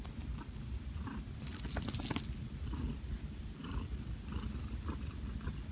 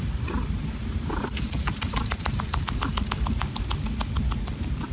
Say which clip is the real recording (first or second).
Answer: first